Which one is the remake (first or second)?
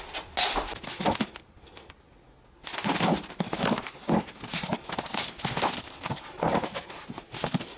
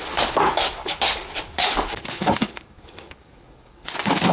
second